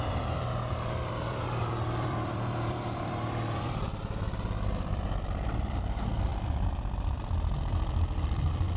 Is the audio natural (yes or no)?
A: no